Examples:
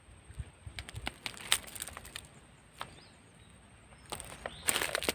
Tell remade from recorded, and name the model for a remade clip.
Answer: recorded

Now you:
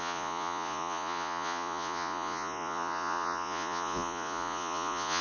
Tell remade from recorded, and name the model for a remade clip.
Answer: remade, vocoder, Vocos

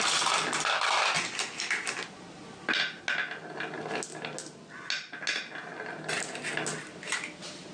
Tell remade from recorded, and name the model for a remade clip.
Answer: recorded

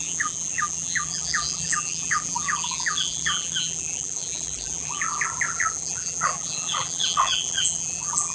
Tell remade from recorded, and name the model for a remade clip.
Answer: remade, vocoder, BigVGAN v2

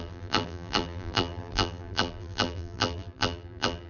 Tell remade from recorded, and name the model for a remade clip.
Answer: remade, vocoder, BigVGAN v2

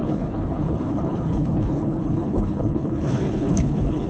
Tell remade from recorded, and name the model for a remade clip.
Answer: remade, codec, HILCodec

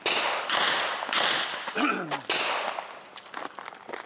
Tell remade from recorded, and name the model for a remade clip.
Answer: recorded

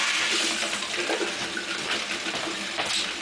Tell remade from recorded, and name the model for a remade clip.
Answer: recorded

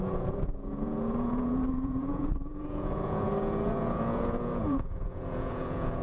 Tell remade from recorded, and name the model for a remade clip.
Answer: remade, vocoder, Vocos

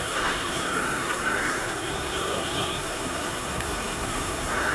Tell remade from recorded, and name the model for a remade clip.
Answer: remade, codec, SNAC